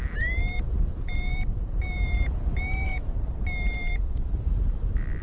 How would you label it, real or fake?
fake